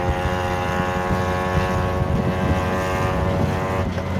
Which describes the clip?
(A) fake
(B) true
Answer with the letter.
B